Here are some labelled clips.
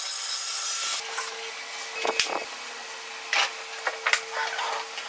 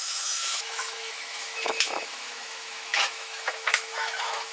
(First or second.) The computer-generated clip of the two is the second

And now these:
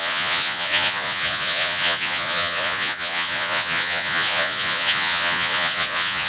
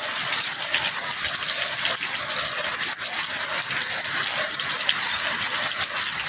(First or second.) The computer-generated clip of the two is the first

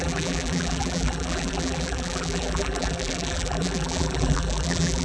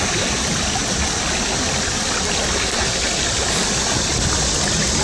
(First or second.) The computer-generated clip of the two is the first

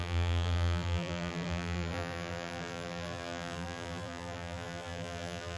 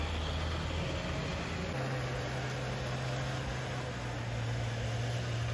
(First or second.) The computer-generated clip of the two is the first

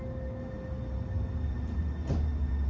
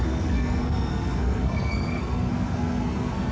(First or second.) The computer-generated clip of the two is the second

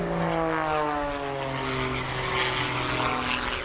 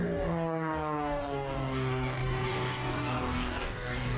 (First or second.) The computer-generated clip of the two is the second